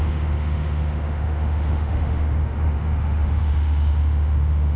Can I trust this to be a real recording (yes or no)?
no